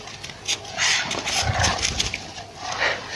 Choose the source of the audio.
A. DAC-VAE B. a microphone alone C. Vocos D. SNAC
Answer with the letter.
B